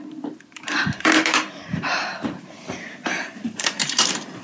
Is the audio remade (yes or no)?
yes